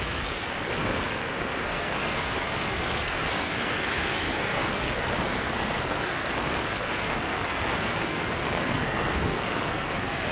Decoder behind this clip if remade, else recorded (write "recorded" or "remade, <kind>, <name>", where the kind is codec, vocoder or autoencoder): remade, codec, SNAC